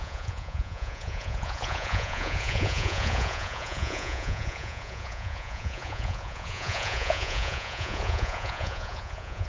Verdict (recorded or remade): remade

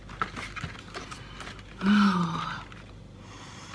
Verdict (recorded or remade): recorded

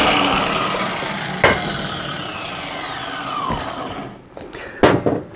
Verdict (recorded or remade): recorded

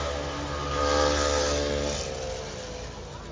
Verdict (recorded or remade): recorded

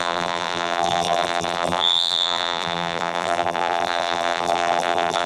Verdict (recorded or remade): remade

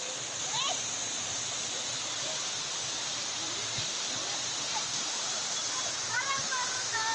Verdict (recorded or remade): recorded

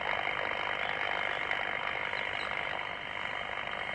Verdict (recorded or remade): recorded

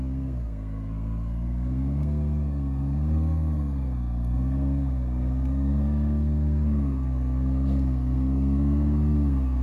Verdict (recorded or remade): remade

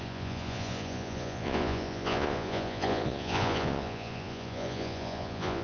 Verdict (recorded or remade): remade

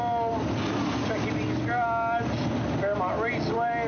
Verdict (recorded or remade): recorded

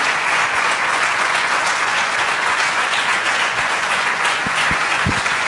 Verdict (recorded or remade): remade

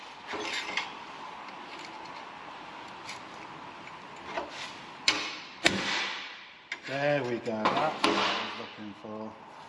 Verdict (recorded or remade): recorded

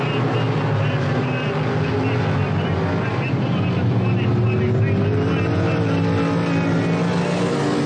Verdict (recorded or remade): recorded